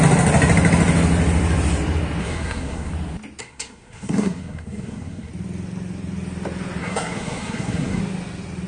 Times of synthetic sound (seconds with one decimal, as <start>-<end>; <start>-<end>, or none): 2.2-2.9; 3.4-5.3; 6.8-8.0